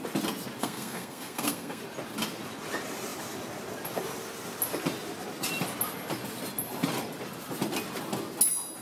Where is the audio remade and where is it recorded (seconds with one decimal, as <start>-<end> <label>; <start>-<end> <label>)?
0.0-0.6 recorded; 0.6-1.8 remade; 1.8-8.8 recorded